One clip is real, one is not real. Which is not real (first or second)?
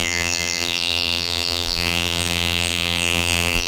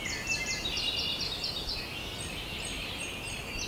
first